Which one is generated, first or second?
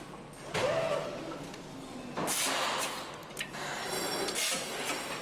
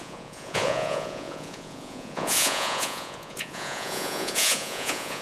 second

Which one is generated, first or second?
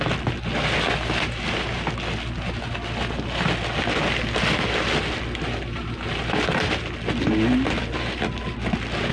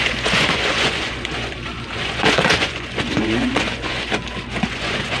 second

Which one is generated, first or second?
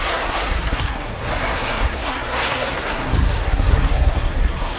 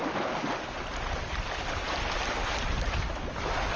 first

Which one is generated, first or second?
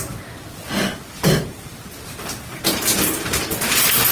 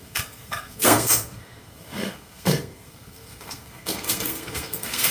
second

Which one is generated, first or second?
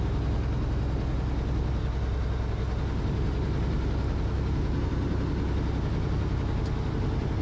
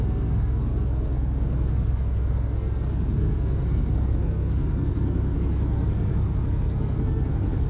second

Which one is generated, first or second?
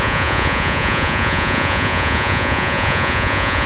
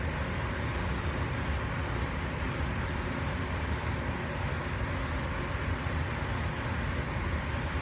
first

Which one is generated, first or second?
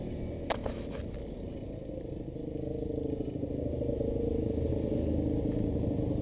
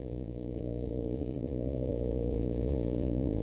second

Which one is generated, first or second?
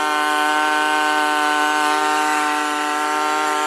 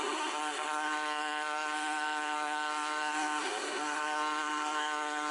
second